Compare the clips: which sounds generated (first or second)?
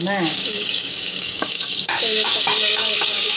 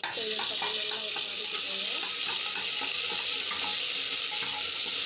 first